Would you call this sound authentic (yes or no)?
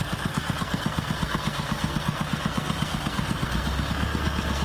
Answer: no